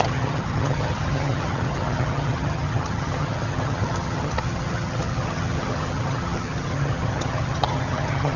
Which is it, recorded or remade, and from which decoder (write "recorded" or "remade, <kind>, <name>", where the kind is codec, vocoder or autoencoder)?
remade, vocoder, HiFi-GAN